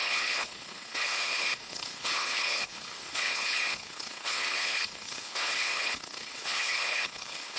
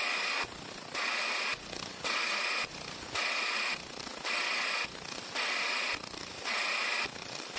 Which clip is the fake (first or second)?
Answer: first